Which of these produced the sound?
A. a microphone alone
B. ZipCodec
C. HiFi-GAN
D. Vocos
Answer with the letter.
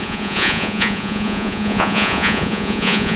D